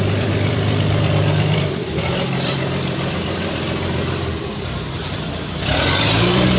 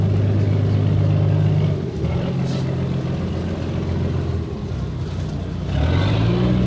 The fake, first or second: first